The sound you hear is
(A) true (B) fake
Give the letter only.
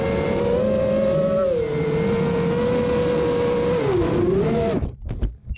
A